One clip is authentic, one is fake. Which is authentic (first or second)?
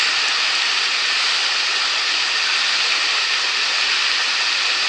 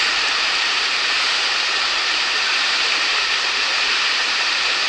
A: first